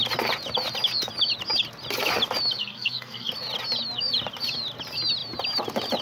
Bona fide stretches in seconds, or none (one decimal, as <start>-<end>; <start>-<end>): 0.0-2.6; 3.3-6.0